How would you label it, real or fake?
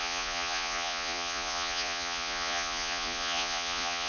fake